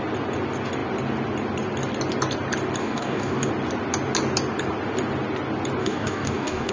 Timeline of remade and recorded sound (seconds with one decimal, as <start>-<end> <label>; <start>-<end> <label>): 0.0-2.8 recorded; 2.8-3.5 remade; 3.5-5.8 recorded; 5.8-6.7 remade